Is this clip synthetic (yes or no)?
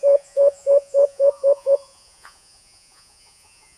yes